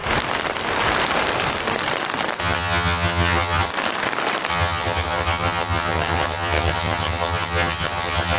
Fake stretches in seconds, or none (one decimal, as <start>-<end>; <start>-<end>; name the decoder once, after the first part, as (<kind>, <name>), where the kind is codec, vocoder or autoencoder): 2.4-3.7 (vocoder, HiFi-GAN); 4.5-8.4